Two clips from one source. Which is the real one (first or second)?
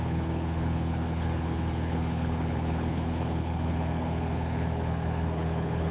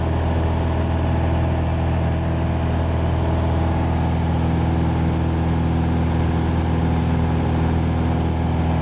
second